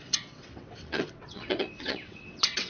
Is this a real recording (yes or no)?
no